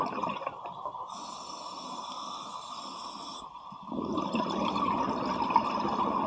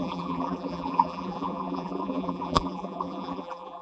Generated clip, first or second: second